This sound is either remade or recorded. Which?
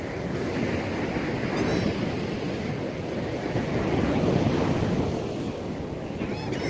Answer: recorded